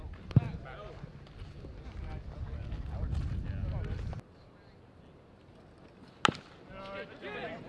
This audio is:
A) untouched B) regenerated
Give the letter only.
A